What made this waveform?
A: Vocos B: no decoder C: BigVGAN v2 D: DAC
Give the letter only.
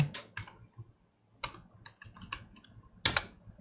B